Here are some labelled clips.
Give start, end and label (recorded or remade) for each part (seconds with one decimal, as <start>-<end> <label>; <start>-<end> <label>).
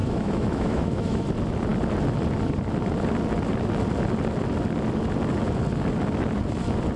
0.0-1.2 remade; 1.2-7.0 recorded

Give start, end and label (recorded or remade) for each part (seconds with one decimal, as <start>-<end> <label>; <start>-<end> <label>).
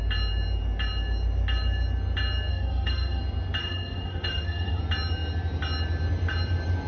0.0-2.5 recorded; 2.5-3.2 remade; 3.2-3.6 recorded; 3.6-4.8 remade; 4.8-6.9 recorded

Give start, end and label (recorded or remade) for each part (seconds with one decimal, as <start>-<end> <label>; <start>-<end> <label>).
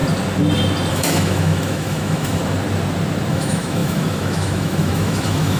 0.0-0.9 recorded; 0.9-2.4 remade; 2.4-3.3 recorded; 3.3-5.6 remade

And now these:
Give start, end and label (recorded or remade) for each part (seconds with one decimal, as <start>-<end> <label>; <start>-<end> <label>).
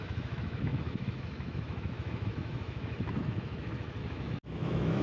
0.0-5.0 remade